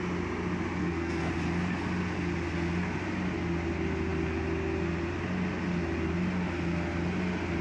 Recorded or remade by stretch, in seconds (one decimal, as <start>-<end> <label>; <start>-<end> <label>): 0.0-0.8 recorded; 0.8-1.3 remade; 1.3-7.6 recorded